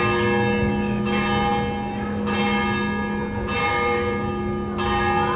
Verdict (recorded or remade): recorded